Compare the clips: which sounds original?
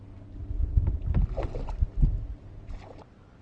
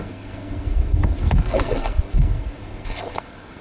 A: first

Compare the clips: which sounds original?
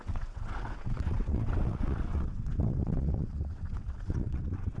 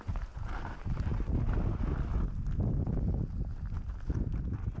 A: second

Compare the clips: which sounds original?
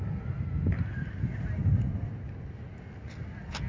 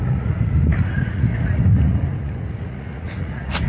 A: first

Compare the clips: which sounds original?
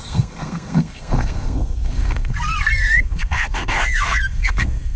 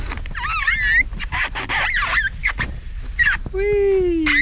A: second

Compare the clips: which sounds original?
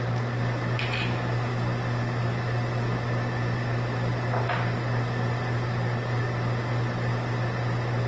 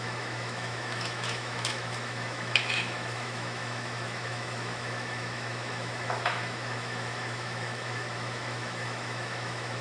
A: first